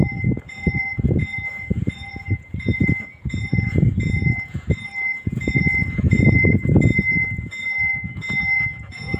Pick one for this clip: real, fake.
fake